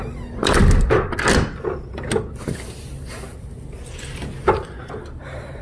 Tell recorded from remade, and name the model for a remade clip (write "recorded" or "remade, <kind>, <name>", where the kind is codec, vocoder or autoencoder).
recorded